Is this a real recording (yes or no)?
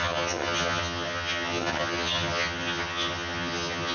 no